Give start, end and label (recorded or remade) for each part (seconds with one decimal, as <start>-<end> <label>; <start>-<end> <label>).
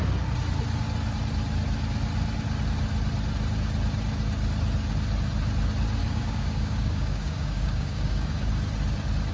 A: 0.0-6.0 recorded; 6.0-8.5 remade; 8.5-9.3 recorded